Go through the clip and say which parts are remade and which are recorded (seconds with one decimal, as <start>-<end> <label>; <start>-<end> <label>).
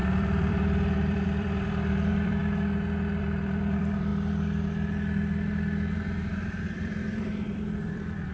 0.0-2.4 remade; 2.4-3.2 recorded; 3.2-4.1 remade; 4.1-6.2 recorded; 6.2-8.3 remade